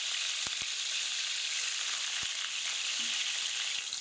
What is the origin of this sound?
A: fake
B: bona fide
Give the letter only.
B